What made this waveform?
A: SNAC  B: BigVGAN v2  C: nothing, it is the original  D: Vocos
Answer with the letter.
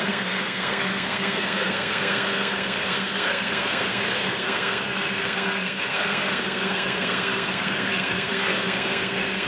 A